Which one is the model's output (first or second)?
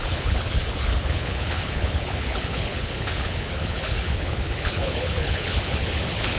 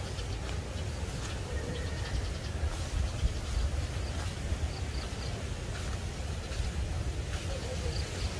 first